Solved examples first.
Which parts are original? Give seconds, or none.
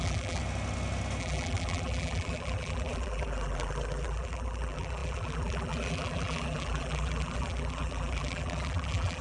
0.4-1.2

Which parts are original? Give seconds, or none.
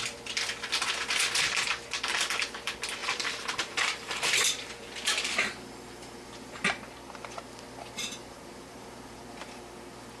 0.0-3.0; 4.7-8.0; 9.2-10.2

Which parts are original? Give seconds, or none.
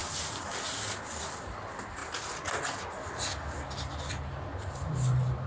0.0-5.5